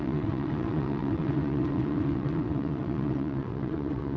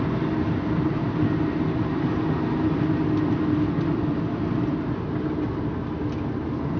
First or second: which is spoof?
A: first